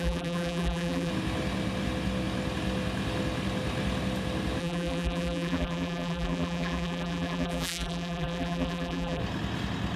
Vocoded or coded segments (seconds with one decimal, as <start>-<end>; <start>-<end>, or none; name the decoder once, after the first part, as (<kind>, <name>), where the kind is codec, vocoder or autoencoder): 0.0-1.1 (vocoder, BigVGAN v2); 4.6-9.2

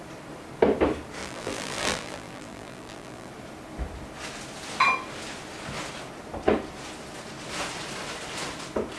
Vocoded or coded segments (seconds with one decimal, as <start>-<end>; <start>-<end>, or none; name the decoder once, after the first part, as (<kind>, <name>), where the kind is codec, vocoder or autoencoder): 1.2-3.3 (vocoder, BigVGAN v2)

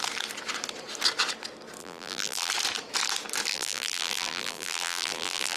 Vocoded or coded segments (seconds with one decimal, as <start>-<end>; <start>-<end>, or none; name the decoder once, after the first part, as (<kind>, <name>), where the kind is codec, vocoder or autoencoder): 1.8-2.5 (vocoder, BigVGAN v2); 3.5-5.6

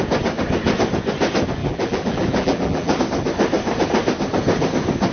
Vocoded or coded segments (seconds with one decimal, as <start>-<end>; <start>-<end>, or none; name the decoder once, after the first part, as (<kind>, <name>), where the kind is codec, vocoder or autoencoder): 1.6-3.0 (vocoder, BigVGAN v2)